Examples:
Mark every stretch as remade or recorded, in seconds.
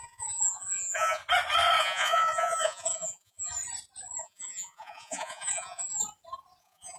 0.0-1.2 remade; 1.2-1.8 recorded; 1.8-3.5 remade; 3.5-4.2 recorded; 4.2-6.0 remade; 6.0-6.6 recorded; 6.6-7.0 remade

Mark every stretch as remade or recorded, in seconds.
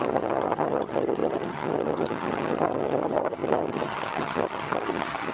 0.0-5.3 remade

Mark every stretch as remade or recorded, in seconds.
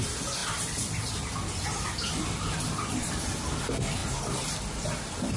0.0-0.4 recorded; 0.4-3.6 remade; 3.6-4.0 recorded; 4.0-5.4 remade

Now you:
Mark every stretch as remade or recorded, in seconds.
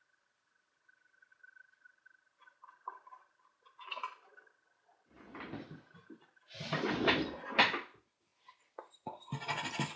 0.0-10.0 recorded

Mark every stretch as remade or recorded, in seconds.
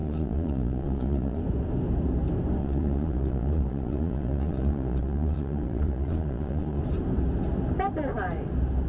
0.0-1.4 remade; 1.4-2.6 recorded; 2.6-6.8 remade; 6.8-8.9 recorded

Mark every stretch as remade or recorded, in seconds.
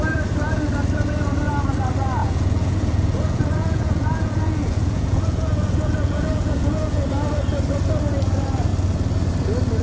0.0-2.2 recorded; 2.2-7.0 remade; 7.0-9.8 recorded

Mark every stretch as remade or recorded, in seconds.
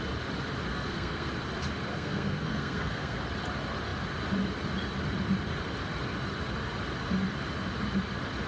0.0-0.7 recorded; 0.7-1.3 remade; 1.3-1.9 recorded; 1.9-3.2 remade; 3.2-8.5 recorded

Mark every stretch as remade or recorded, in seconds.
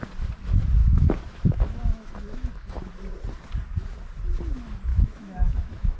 0.0-0.8 recorded; 0.8-2.9 remade; 2.9-4.9 recorded; 4.9-6.0 remade